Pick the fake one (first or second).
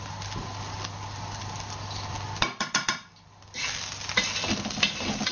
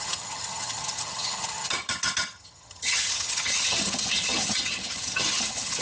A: second